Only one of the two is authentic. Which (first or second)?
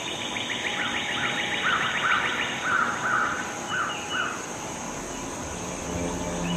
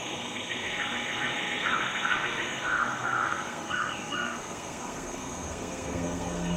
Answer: first